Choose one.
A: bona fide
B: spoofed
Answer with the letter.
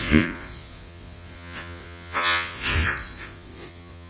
B